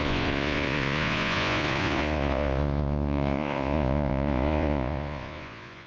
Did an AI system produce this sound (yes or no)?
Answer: yes